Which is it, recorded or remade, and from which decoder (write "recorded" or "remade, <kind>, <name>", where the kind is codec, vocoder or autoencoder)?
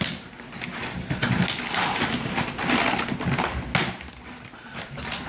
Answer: recorded